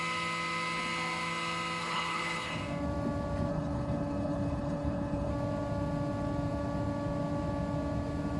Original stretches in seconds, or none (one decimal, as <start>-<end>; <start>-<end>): 0.0-1.8; 2.6-3.5; 5.3-8.4